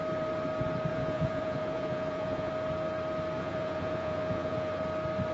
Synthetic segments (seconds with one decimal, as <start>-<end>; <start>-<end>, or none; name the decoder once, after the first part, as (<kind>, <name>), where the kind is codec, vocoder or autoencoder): 0.9-2.5 (vocoder, Vocos); 3.4-4.8